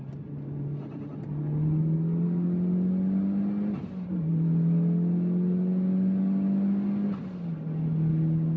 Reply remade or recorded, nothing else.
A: recorded